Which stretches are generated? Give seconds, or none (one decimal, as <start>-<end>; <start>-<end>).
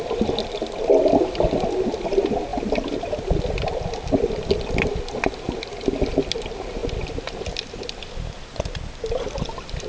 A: none